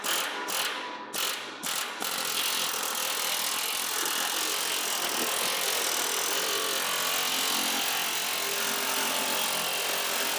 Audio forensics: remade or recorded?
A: recorded